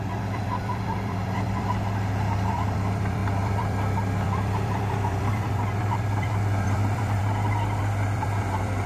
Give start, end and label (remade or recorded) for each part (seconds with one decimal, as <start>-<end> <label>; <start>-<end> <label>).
0.0-7.2 remade; 7.2-7.8 recorded; 7.8-8.9 remade